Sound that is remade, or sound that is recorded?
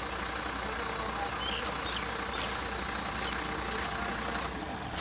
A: recorded